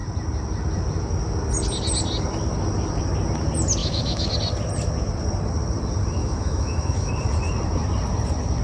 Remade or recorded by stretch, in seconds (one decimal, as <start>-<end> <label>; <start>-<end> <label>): 0.0-3.8 recorded; 3.8-4.3 remade; 4.3-6.2 recorded; 6.2-7.1 remade; 7.1-8.6 recorded